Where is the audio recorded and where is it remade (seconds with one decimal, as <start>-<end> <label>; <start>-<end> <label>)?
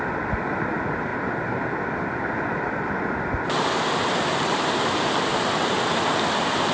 0.0-6.7 recorded